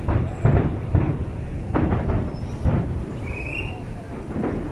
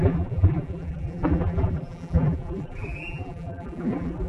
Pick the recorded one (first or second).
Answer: first